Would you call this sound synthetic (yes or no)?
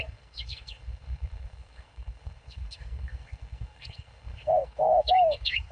yes